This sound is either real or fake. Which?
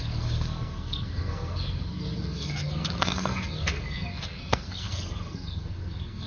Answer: fake